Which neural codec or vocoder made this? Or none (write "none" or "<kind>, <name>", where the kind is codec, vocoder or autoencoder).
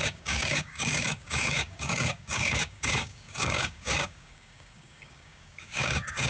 codec, DAC